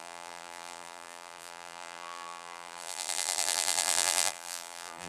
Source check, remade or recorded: remade